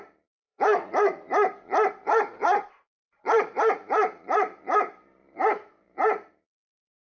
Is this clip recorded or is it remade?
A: remade